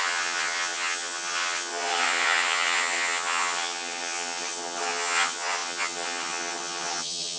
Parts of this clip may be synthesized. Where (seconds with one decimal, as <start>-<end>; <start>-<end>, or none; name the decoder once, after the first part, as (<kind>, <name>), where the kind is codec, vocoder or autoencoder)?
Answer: 0.0-7.4 (vocoder, HiFi-GAN)